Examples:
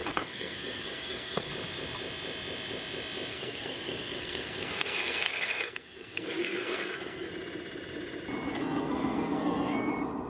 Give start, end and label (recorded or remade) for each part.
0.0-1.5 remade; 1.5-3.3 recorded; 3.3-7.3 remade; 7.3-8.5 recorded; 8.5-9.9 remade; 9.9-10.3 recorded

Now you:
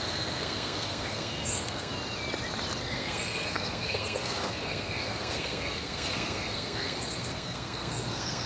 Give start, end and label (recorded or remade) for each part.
0.0-1.9 remade; 1.9-2.8 recorded; 2.8-8.5 remade